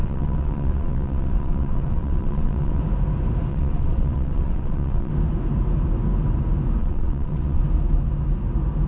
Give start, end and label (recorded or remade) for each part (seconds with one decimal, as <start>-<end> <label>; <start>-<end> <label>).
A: 0.0-2.8 remade; 2.8-3.5 recorded; 3.5-5.1 remade; 5.1-6.8 recorded; 6.8-7.6 remade; 7.6-8.9 recorded